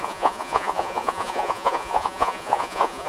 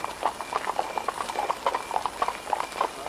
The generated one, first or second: first